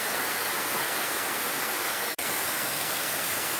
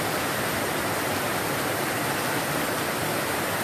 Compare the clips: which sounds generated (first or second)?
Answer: first